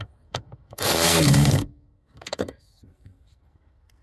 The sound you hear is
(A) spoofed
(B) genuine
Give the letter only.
A